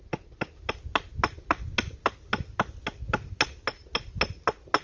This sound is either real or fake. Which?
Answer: real